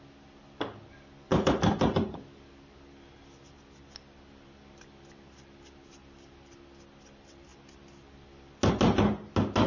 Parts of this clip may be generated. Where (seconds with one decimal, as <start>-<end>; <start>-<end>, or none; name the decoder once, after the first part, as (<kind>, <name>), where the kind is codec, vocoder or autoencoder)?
none